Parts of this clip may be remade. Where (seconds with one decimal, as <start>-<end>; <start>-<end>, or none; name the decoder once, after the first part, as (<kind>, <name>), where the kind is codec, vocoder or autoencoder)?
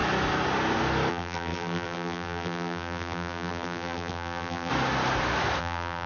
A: 1.1-4.7 (vocoder, BigVGAN v2); 5.6-6.1